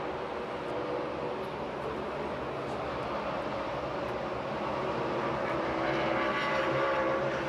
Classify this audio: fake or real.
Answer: real